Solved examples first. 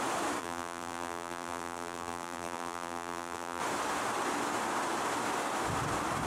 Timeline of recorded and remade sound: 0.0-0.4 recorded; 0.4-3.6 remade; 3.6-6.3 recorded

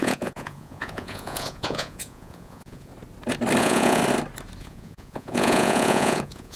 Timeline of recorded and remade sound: 0.0-2.9 remade; 2.9-3.6 recorded; 3.6-4.0 remade; 4.0-4.6 recorded; 4.6-6.6 remade

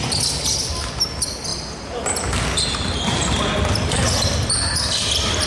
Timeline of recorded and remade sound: 0.0-5.5 recorded

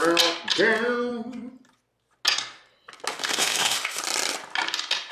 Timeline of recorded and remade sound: 0.0-3.1 recorded; 3.1-4.0 remade; 4.0-5.1 recorded

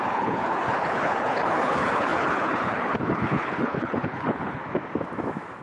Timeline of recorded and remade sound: 0.0-4.6 remade; 4.6-5.6 recorded

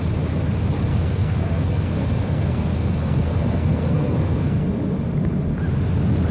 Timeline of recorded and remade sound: 0.0-0.9 recorded; 0.9-4.7 remade; 4.7-6.3 recorded

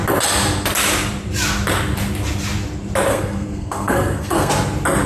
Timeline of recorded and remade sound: 0.0-3.1 recorded; 3.1-4.5 remade; 4.5-5.1 recorded

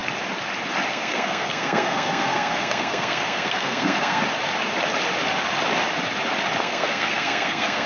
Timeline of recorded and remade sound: 0.0-0.9 recorded; 0.9-4.2 remade; 4.2-6.6 recorded; 6.6-7.9 remade